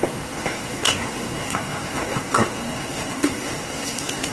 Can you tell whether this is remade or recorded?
remade